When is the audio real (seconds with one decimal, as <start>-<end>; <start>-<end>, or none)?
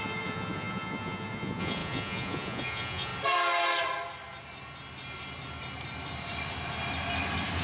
3.1-7.6